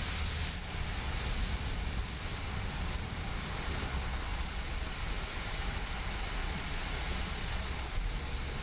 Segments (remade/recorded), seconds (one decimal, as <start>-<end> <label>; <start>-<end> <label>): 0.0-4.3 recorded; 4.3-5.0 remade; 5.0-6.4 recorded; 6.4-7.9 remade; 7.9-8.6 recorded